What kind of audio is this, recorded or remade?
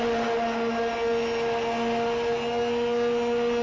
recorded